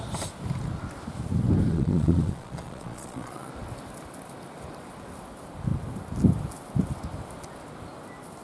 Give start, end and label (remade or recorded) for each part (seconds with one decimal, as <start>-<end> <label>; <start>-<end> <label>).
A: 0.0-1.7 recorded; 1.7-3.5 remade; 3.5-8.4 recorded